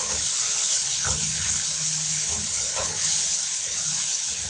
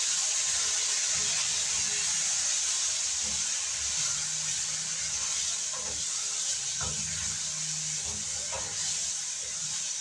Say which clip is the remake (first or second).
first